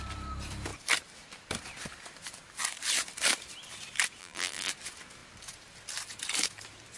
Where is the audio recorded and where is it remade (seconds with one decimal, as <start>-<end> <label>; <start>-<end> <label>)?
0.0-4.2 recorded; 4.2-4.7 remade; 4.7-7.0 recorded